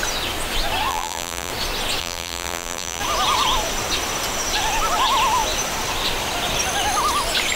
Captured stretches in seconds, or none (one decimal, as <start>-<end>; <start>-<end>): 0.0-0.9; 1.5-2.0; 3.0-7.6